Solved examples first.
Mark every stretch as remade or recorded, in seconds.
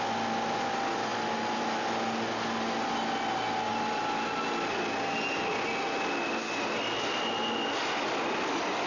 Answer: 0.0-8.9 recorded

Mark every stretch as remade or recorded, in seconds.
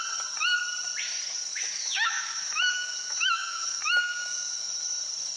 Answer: 0.0-1.5 recorded; 1.5-4.7 remade; 4.7-5.4 recorded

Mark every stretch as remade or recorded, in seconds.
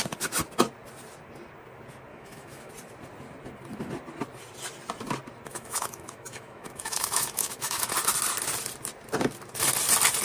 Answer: 0.0-2.1 recorded; 2.1-2.7 remade; 2.7-5.5 recorded; 5.5-7.9 remade; 7.9-10.2 recorded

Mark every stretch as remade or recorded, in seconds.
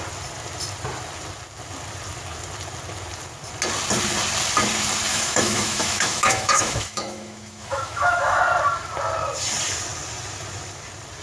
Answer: 0.0-5.1 recorded; 5.1-8.4 remade; 8.4-11.2 recorded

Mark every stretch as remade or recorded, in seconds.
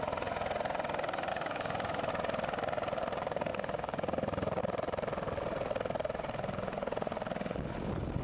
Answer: 0.0-1.3 recorded; 1.3-2.1 remade; 2.1-8.2 recorded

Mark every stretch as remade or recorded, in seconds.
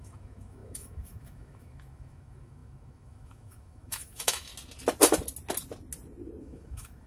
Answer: 0.0-4.5 remade; 4.5-6.4 recorded; 6.4-7.1 remade